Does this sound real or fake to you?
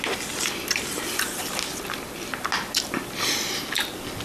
real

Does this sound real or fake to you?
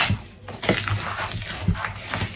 real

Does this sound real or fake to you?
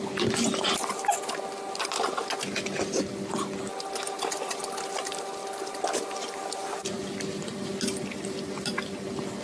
real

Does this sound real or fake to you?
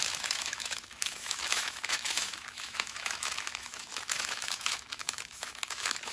fake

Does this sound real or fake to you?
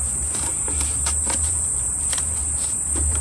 fake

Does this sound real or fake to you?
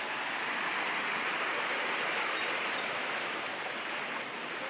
real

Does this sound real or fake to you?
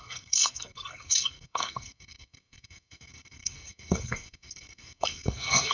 fake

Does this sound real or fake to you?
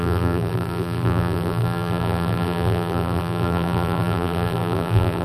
fake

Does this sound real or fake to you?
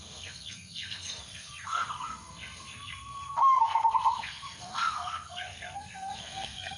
fake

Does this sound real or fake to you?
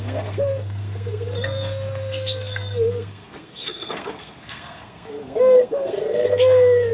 fake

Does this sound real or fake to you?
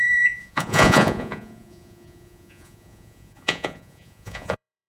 fake